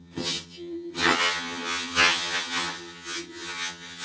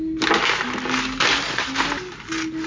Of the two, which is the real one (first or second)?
second